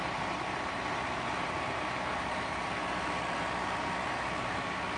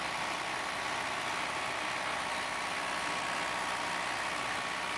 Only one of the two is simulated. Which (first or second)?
first